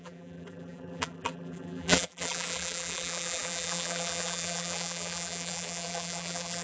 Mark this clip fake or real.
fake